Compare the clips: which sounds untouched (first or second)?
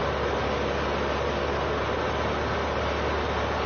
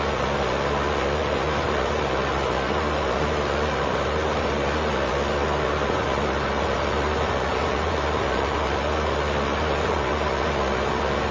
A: first